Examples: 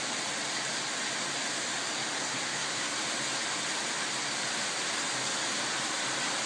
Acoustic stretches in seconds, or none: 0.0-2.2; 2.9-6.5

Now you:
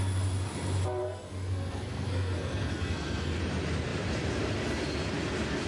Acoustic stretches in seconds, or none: 0.0-1.0; 3.4-5.7

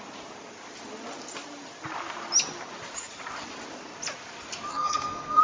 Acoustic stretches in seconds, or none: 0.0-4.7

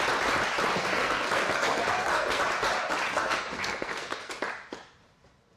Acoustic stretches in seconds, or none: 0.0-0.8; 2.4-3.1; 4.3-5.6